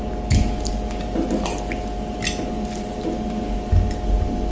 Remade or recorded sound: recorded